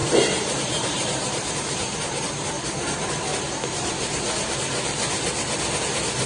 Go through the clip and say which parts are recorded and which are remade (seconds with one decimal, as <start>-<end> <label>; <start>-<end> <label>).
0.0-2.5 remade; 2.5-3.3 recorded; 3.3-4.5 remade; 4.5-6.3 recorded